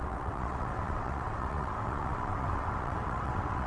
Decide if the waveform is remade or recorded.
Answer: remade